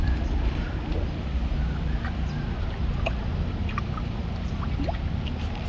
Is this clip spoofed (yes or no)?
no